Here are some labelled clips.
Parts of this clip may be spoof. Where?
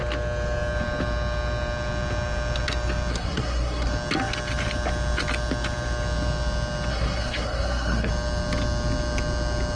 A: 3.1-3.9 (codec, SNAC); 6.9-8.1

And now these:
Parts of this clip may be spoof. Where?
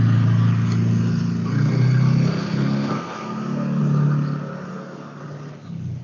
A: 2.4-3.8 (codec, SNAC); 4.7-5.2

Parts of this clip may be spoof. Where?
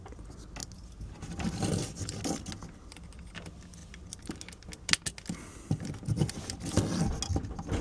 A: none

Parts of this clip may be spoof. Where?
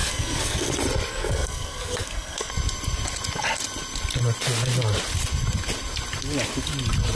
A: 0.0-0.7 (codec, SNAC); 1.1-2.5